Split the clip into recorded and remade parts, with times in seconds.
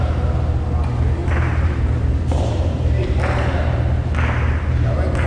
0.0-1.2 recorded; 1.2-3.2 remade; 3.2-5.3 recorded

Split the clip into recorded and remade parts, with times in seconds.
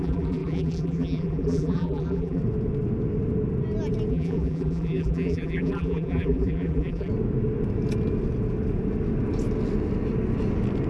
0.0-2.4 remade; 2.4-4.1 recorded; 4.1-7.1 remade; 7.1-10.9 recorded